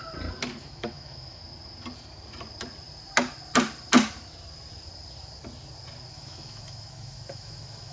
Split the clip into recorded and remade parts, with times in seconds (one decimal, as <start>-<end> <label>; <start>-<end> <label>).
0.0-0.6 recorded; 0.6-1.4 remade; 1.4-6.1 recorded; 6.1-7.9 remade